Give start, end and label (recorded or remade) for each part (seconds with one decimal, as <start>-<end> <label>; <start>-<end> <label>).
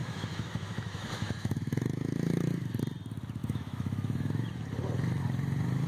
0.0-2.8 remade; 2.8-3.4 recorded; 3.4-4.5 remade; 4.5-5.9 recorded